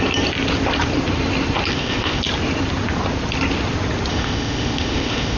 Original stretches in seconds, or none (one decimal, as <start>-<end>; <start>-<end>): 0.0-1.7; 2.2-4.1